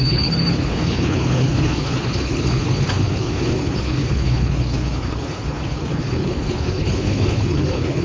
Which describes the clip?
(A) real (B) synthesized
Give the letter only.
B